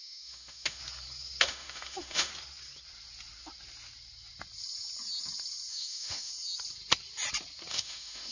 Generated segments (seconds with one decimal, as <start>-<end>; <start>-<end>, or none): 0.0-0.8; 1.4-2.3; 5.7-6.3; 7.7-8.3